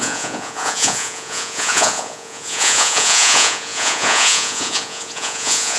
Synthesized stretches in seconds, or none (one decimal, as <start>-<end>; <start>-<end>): 0.0-5.8